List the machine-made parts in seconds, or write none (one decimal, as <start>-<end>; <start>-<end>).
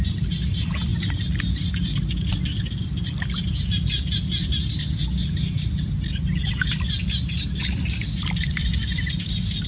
none